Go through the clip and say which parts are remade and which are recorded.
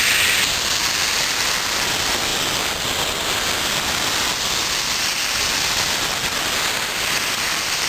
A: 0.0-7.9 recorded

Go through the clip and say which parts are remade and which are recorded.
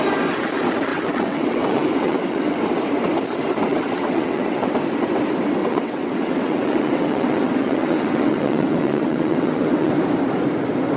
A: 0.0-0.9 recorded; 0.9-2.6 remade; 2.6-3.7 recorded; 3.7-4.7 remade; 4.7-5.6 recorded; 5.6-9.9 remade; 9.9-11.0 recorded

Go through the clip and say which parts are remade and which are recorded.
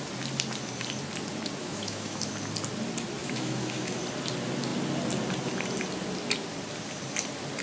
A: 0.0-1.6 recorded; 1.6-2.3 remade; 2.3-3.2 recorded; 3.2-4.0 remade; 4.0-7.6 recorded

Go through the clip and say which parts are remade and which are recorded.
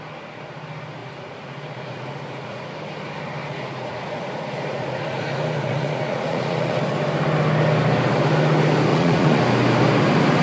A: 0.0-1.0 recorded; 1.0-2.7 remade; 2.7-3.4 recorded; 3.4-6.8 remade; 6.8-8.9 recorded; 8.9-9.4 remade; 9.4-10.4 recorded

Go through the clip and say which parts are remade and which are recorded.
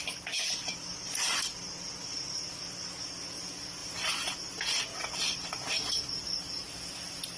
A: 0.0-7.4 recorded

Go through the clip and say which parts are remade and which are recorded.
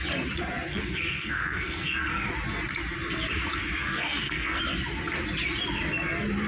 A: 0.0-0.7 recorded; 0.7-2.3 remade; 2.3-3.8 recorded; 3.8-4.6 remade; 4.6-6.5 recorded